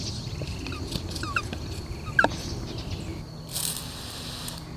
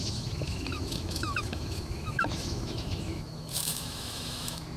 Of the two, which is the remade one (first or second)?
second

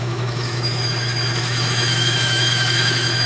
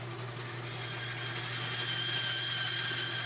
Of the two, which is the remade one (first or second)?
first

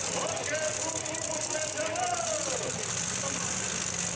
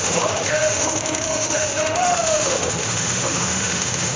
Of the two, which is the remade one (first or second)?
second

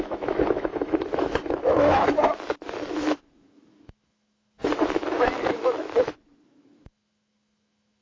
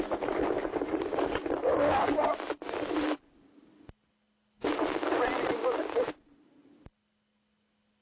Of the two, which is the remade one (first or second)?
first